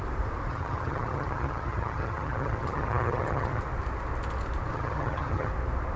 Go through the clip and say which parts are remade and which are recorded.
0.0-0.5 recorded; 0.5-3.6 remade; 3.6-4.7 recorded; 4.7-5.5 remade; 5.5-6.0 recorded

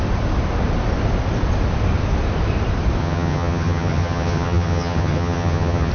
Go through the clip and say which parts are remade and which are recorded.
0.0-3.0 recorded; 3.0-5.9 remade

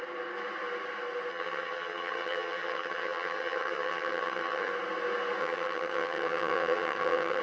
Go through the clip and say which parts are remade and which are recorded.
0.0-1.3 recorded; 1.3-4.7 remade; 4.7-5.4 recorded; 5.4-7.4 remade

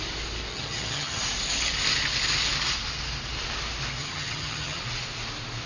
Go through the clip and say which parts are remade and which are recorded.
0.0-0.5 recorded; 0.5-1.2 remade; 1.2-4.0 recorded; 4.0-4.8 remade; 4.8-5.7 recorded

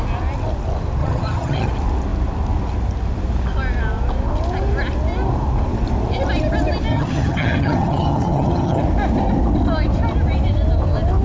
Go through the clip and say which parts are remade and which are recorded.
0.0-1.0 recorded; 1.0-1.7 remade; 1.7-6.9 recorded; 6.9-8.8 remade; 8.8-11.2 recorded

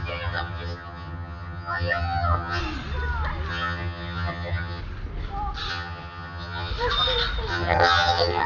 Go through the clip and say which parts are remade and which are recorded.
0.0-2.6 remade; 2.6-3.5 recorded; 3.5-4.8 remade; 4.8-5.7 recorded; 5.7-6.7 remade; 6.7-7.5 recorded; 7.5-8.5 remade

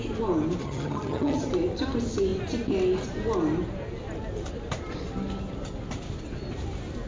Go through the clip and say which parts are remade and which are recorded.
0.0-0.6 recorded; 0.6-1.5 remade; 1.5-7.1 recorded